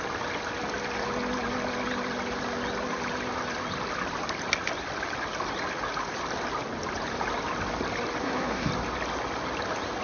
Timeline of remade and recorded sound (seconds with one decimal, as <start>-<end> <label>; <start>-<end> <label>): 0.0-8.2 recorded; 8.2-8.7 remade; 8.7-10.0 recorded